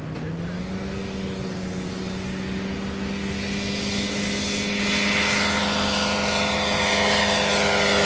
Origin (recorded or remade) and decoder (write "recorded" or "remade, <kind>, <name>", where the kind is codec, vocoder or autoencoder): recorded